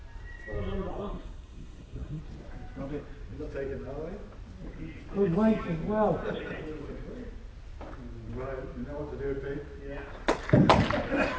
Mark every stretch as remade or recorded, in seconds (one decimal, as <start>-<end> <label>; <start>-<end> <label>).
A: 0.0-0.9 recorded; 0.9-2.2 remade; 2.2-11.4 recorded